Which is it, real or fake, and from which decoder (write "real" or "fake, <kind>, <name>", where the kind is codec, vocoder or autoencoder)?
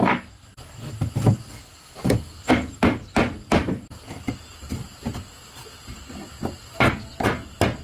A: real